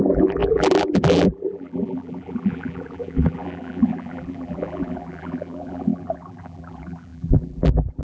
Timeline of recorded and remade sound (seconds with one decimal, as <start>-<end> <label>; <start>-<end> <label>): 0.0-8.0 remade